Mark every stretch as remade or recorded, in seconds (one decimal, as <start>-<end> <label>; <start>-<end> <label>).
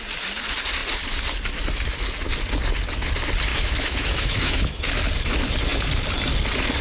0.0-3.5 recorded; 3.5-4.8 remade; 4.8-6.8 recorded